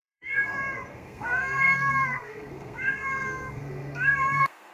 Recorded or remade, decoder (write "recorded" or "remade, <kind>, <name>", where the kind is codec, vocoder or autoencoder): remade, codec, SNAC